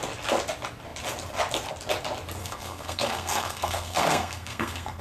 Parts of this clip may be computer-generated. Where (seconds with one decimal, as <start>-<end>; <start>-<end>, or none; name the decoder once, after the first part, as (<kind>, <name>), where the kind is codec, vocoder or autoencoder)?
2.4-5.0 (codec, SNAC)